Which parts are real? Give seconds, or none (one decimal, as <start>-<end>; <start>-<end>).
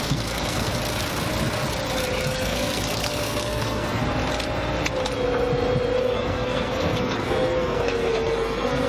0.7-2.2; 4.0-6.0